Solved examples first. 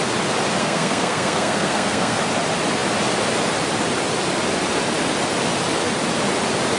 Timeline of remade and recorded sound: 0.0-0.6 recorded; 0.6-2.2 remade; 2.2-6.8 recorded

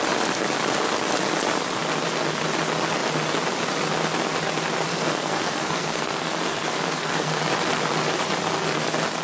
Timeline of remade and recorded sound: 0.0-4.9 recorded; 4.9-7.4 remade; 7.4-9.2 recorded

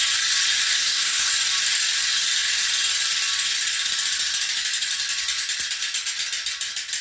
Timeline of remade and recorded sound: 0.0-0.7 recorded; 0.7-1.3 remade; 1.3-7.0 recorded

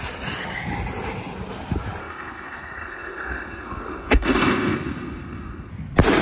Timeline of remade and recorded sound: 0.0-2.0 recorded; 2.0-5.7 remade; 5.7-6.2 recorded

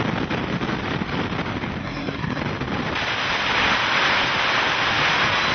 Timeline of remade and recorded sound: 0.0-1.8 recorded; 1.8-2.4 remade; 2.4-5.5 recorded

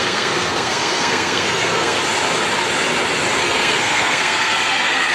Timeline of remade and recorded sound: 0.0-2.0 remade; 2.0-3.4 recorded; 3.4-5.1 remade

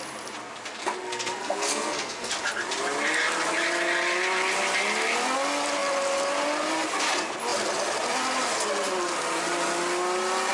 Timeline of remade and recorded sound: 0.0-0.7 recorded; 0.7-2.3 remade; 2.3-10.5 recorded

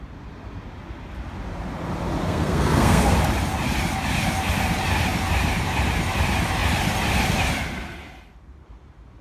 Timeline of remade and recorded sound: 0.0-2.2 recorded; 2.2-3.2 remade; 3.2-9.2 recorded